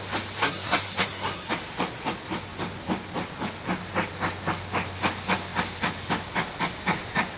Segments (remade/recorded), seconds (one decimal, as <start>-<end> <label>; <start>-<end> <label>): 0.0-0.4 recorded; 0.4-1.5 remade; 1.5-7.4 recorded